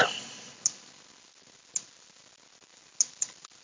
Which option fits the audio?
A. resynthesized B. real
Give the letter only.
B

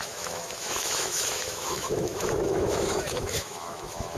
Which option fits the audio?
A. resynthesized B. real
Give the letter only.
A